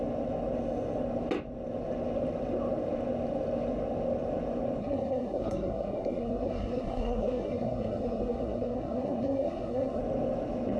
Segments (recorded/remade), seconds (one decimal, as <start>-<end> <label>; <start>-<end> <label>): 0.0-4.8 recorded; 4.8-10.0 remade; 10.0-10.8 recorded